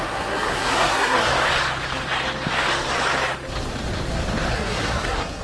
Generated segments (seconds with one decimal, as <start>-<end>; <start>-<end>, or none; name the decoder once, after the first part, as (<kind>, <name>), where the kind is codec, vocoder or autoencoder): 0.0-1.3 (codec, SNAC); 4.5-5.4